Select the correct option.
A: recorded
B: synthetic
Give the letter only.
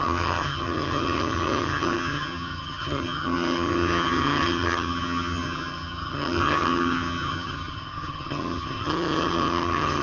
B